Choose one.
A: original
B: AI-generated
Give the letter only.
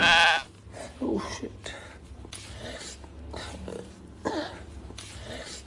A